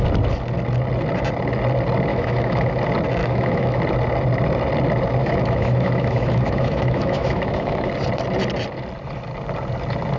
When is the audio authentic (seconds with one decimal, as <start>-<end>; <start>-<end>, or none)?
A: 0.0-2.1; 2.7-3.2; 3.8-5.2; 7.9-10.2